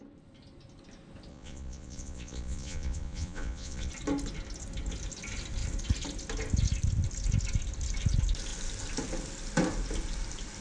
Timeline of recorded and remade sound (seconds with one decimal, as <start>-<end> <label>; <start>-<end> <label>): 0.0-1.3 recorded; 1.3-3.9 remade; 3.9-10.6 recorded